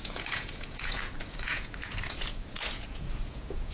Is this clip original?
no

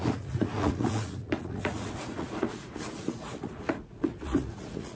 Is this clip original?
no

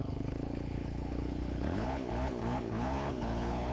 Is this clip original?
no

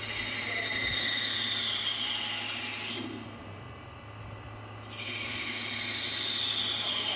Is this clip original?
yes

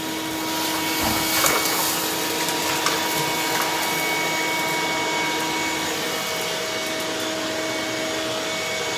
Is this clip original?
yes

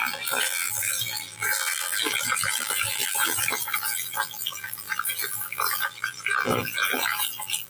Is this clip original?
no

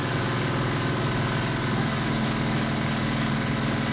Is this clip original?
no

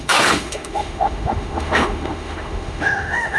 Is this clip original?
no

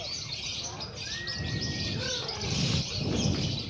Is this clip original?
yes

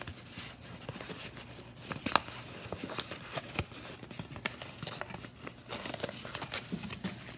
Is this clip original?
yes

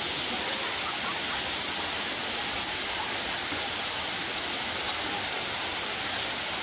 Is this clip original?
yes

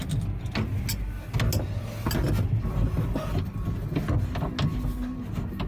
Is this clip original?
yes